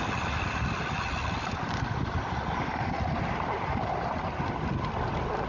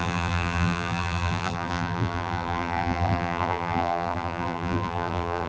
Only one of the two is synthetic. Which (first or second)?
second